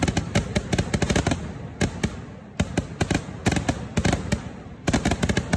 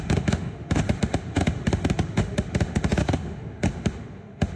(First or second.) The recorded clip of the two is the first